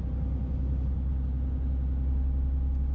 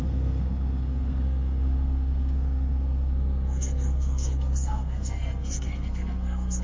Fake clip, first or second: second